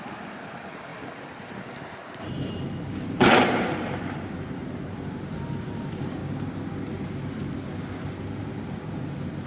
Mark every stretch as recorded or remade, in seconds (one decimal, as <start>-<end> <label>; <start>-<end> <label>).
0.0-0.9 remade; 0.9-2.5 recorded; 2.5-6.2 remade; 6.2-8.4 recorded; 8.4-9.5 remade